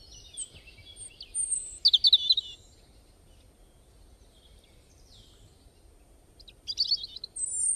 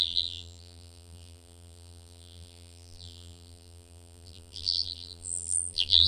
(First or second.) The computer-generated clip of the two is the second